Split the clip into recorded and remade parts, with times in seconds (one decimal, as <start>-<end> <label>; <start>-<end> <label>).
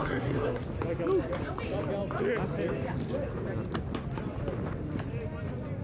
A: 0.0-0.6 remade; 0.6-5.8 recorded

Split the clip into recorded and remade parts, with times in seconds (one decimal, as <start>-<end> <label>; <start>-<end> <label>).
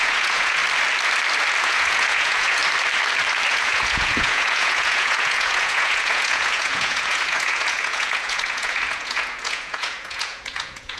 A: 0.0-0.6 remade; 0.6-1.6 recorded; 1.6-2.6 remade; 2.6-3.5 recorded; 3.5-11.0 remade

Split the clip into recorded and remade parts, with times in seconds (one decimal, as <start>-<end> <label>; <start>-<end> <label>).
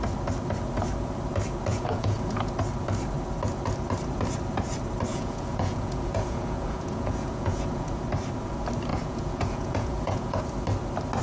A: 0.0-1.7 recorded; 1.7-2.5 remade; 2.5-5.1 recorded; 5.1-8.0 remade; 8.0-8.9 recorded; 8.9-10.4 remade; 10.4-11.2 recorded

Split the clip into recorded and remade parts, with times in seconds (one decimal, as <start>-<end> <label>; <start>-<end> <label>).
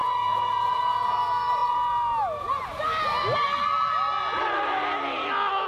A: 0.0-0.8 remade; 0.8-5.7 recorded